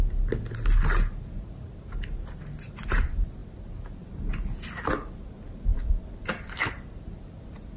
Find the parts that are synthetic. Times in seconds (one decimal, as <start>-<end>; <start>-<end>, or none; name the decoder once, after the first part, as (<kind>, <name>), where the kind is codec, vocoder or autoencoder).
none